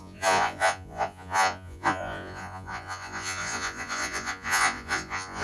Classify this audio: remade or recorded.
remade